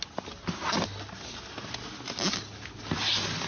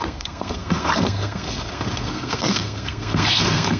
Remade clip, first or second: second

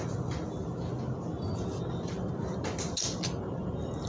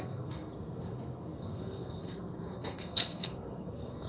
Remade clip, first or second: second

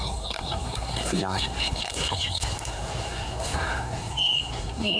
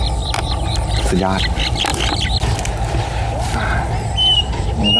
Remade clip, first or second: first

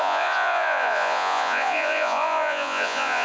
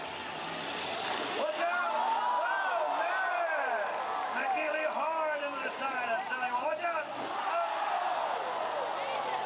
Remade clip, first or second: first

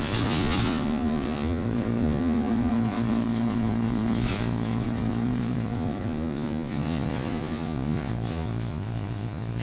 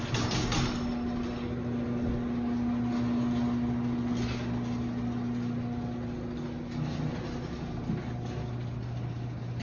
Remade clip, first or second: first